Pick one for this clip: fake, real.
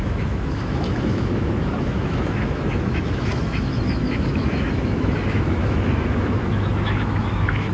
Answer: fake